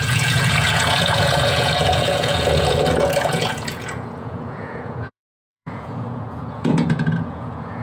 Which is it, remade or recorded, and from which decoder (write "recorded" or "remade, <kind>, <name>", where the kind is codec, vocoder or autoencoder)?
remade, vocoder, Vocos